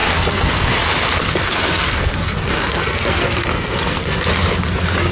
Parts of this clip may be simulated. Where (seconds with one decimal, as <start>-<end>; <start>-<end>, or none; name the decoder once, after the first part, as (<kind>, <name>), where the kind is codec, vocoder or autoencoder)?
0.0-0.7 (codec, SNAC); 1.2-4.3